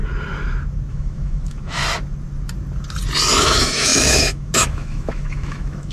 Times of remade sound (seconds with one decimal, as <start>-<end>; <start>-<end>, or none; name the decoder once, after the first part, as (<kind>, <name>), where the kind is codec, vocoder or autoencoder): 0.9-1.8 (autoencoder, DAC-VAE); 3.3-5.9

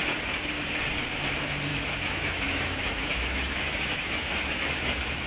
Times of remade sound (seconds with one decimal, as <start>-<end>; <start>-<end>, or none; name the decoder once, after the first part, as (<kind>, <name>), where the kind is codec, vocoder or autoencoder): 1.7-5.3 (autoencoder, DAC-VAE)